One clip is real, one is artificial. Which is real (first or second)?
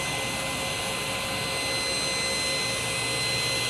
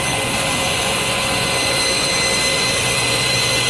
first